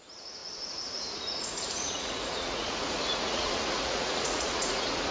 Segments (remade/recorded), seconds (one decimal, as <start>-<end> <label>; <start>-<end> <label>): 0.0-5.1 remade